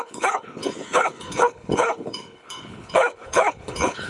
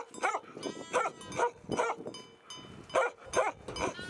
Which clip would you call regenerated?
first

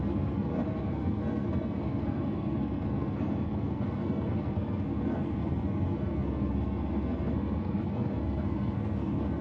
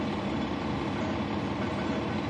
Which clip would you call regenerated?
first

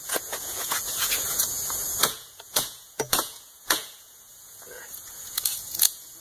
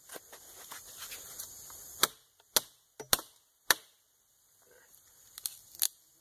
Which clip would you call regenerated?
first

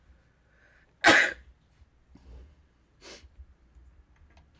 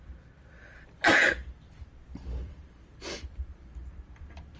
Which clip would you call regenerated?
second